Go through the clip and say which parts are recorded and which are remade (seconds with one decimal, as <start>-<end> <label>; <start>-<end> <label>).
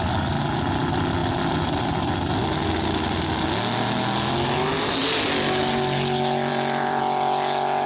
0.0-6.5 recorded; 6.5-7.0 remade; 7.0-7.9 recorded